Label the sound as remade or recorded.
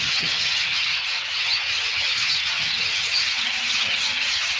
remade